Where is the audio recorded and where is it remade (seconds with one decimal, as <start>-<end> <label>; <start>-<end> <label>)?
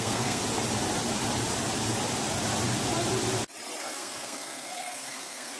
0.0-0.4 remade; 0.4-3.8 recorded; 3.8-5.6 remade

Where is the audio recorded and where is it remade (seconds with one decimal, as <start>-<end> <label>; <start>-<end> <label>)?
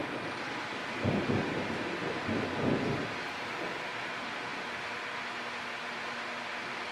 0.0-6.9 recorded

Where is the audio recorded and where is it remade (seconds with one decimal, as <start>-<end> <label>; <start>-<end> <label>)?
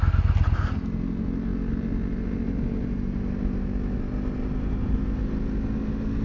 0.0-6.2 recorded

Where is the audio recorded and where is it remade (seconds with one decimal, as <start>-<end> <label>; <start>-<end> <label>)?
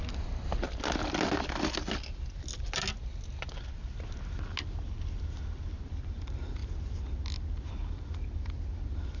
0.0-9.2 recorded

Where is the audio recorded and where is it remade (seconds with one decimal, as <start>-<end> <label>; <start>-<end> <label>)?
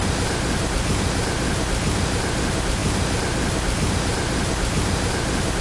0.0-5.6 recorded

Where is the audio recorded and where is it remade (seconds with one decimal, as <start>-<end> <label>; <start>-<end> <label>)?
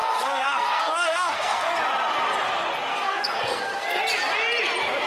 0.0-1.7 remade; 1.7-2.9 recorded; 2.9-4.0 remade; 4.0-5.1 recorded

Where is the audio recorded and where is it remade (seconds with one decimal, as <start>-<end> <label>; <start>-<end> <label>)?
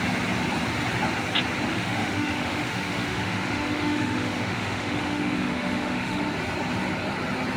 0.0-1.7 recorded; 1.7-6.2 remade; 6.2-7.6 recorded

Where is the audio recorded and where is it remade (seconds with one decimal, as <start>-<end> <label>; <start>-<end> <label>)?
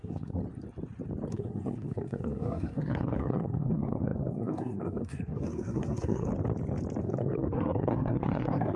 0.0-0.4 remade; 0.4-1.3 recorded; 1.3-6.3 remade; 6.3-7.0 recorded; 7.0-8.8 remade